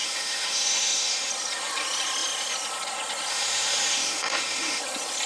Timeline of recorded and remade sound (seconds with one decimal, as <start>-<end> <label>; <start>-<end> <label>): 0.0-1.3 remade; 1.3-3.3 recorded; 3.3-4.8 remade; 4.8-5.3 recorded